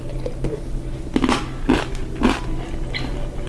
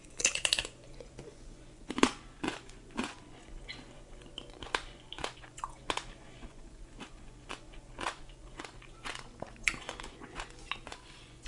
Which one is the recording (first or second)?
first